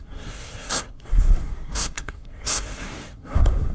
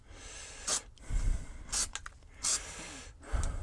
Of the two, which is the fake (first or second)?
first